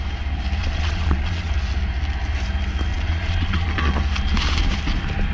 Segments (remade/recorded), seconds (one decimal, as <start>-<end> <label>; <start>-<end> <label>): 0.0-0.6 recorded; 0.6-1.5 remade; 1.5-2.9 recorded; 2.9-4.0 remade; 4.0-5.3 recorded